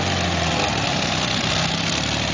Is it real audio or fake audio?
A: real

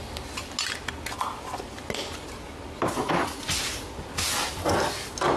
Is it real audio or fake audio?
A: real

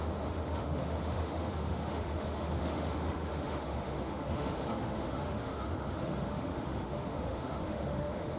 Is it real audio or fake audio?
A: fake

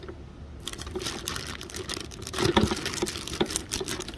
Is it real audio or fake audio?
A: fake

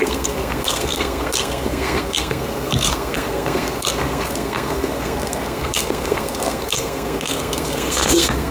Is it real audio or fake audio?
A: fake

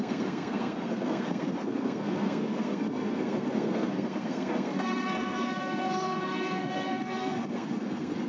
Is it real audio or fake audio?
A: fake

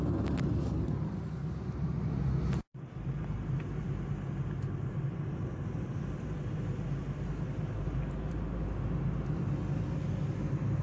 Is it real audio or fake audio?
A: real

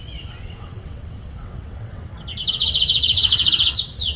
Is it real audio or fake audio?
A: fake